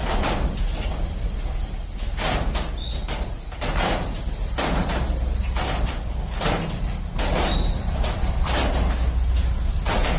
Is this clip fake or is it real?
real